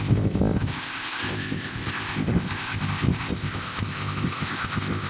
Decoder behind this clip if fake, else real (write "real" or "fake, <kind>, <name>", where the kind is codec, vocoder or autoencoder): fake, codec, ZipCodec